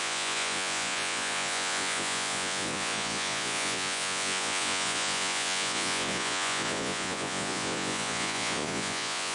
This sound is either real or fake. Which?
fake